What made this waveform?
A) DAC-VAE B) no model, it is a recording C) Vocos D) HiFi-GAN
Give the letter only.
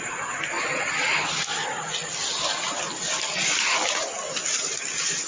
B